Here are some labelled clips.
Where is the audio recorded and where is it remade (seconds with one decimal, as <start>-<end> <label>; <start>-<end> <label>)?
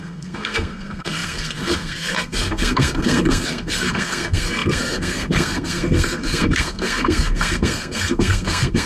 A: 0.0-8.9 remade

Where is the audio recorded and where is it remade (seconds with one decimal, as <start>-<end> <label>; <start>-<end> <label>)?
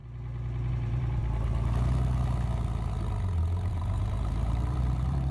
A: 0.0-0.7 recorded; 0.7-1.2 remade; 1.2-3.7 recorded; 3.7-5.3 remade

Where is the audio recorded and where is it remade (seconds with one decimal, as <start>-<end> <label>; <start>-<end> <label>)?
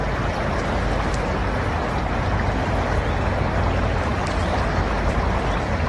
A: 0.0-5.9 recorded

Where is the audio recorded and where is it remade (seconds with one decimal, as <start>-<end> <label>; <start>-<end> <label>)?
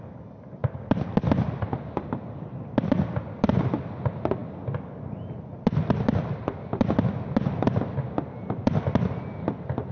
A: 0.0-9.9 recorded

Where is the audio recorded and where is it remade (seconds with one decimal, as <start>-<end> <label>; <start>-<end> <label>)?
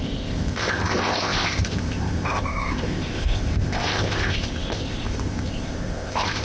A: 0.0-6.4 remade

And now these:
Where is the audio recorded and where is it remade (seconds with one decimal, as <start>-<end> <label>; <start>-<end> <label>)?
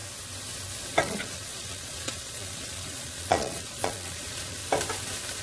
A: 0.0-1.0 recorded; 1.0-4.6 remade; 4.6-5.4 recorded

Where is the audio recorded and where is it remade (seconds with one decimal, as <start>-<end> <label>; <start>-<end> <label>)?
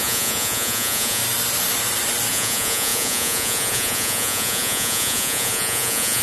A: 0.0-1.2 remade; 1.2-2.3 recorded; 2.3-6.2 remade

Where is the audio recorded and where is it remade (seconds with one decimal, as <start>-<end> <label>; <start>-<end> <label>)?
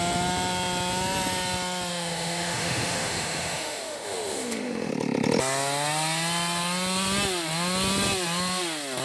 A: 0.0-1.9 recorded; 1.9-4.9 remade; 4.9-9.0 recorded